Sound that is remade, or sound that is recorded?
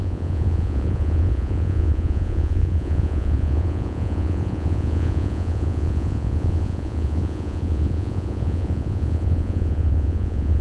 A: remade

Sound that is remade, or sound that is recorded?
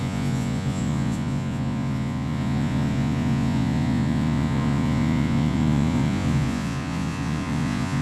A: remade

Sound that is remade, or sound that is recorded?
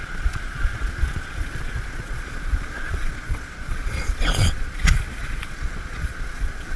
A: remade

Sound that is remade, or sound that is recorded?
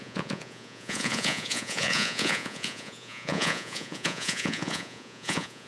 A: remade